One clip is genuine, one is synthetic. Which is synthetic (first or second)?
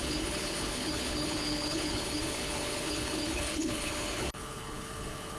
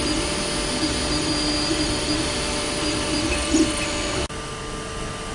first